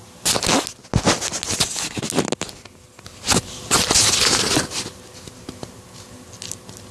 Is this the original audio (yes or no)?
yes